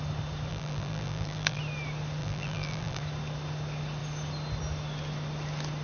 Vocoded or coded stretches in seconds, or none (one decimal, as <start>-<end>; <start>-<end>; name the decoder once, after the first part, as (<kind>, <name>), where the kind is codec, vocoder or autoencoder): 0.5-1.6 (vocoder, BigVGAN v2); 2.2-3.0

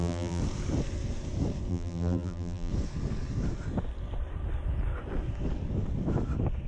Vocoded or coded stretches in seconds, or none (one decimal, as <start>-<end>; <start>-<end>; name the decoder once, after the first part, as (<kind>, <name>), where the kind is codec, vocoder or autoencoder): 0.0-0.4 (vocoder, BigVGAN v2); 1.7-2.7

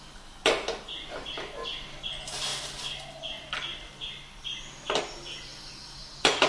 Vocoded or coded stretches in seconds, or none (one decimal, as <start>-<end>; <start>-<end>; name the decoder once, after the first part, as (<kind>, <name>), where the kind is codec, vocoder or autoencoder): 5.5-6.5 (vocoder, BigVGAN v2)